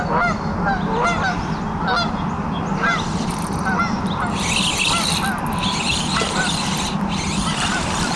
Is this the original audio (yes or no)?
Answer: yes